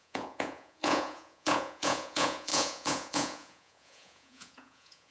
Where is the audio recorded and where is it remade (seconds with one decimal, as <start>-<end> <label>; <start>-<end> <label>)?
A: 0.0-5.1 remade